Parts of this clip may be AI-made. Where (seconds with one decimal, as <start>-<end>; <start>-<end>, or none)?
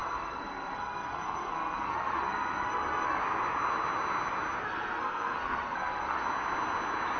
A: 0.0-3.2; 4.6-6.2